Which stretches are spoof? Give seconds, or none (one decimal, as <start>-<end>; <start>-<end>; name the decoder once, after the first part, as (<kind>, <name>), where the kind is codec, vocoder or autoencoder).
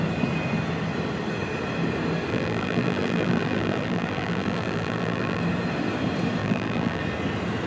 2.3-5.4 (vocoder, BigVGAN v2); 6.4-7.0